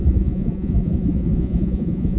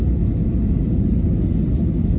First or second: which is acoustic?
second